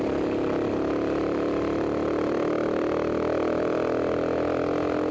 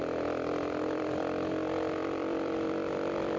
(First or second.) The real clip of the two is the first